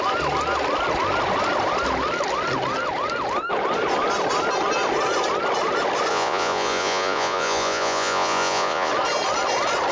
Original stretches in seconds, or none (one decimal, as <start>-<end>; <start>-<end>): 0.0-6.1; 8.9-9.9